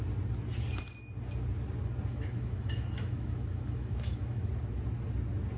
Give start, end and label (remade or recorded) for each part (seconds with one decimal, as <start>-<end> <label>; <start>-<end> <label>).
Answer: 0.0-2.1 recorded; 2.1-4.5 remade; 4.5-5.6 recorded